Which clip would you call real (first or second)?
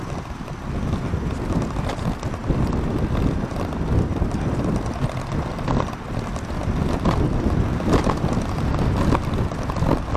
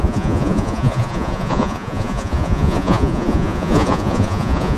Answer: first